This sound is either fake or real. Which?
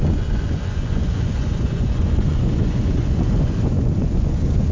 fake